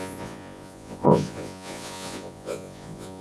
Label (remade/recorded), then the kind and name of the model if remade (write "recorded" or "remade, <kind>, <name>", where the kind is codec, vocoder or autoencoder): remade, vocoder, Vocos